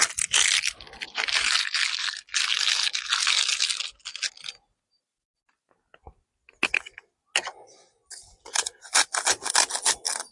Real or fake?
real